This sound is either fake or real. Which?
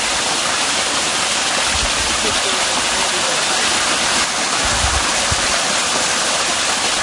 real